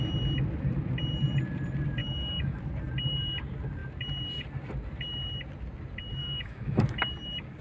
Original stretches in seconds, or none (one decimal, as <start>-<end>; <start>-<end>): 0.0-2.0; 2.6-6.2; 6.8-7.6